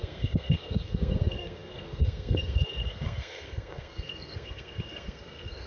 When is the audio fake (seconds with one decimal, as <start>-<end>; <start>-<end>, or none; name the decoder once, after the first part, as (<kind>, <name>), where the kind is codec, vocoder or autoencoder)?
0.0-5.7 (codec, SNAC)